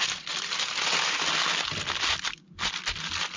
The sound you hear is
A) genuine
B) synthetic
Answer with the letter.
A